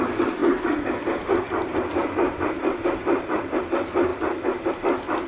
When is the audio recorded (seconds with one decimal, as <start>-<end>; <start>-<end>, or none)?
0.0-0.4; 3.6-4.1; 4.7-5.3